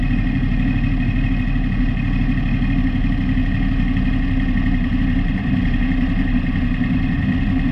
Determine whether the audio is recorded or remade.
recorded